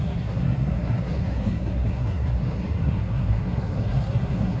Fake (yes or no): yes